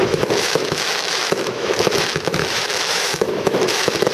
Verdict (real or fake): fake